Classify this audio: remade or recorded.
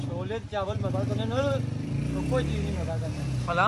recorded